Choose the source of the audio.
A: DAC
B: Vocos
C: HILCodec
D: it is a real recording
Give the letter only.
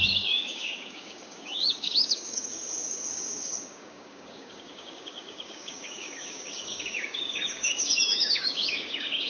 A